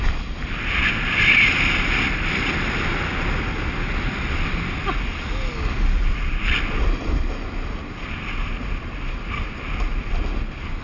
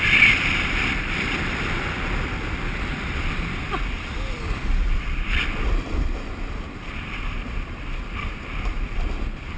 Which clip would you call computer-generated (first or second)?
second